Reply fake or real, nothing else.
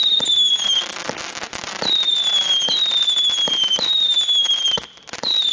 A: real